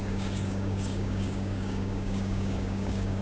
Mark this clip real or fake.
fake